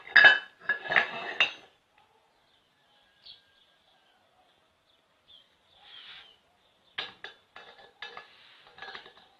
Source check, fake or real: real